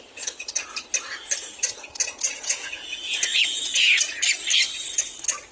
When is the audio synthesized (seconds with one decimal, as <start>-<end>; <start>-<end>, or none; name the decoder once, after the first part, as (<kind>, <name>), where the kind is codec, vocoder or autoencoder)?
1.4-4.2 (vocoder, Vocos)